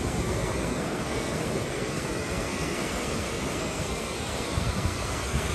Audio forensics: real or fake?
fake